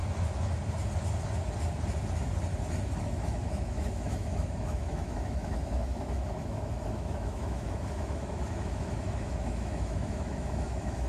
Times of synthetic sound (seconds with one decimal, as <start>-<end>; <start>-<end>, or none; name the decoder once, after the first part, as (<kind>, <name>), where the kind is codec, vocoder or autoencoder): 3.0-11.1 (autoencoder, DAC-VAE)